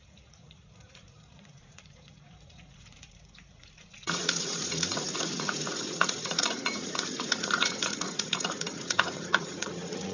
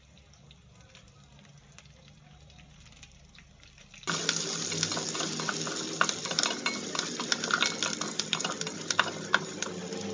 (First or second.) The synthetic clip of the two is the first